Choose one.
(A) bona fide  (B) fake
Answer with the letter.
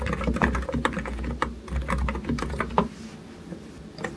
A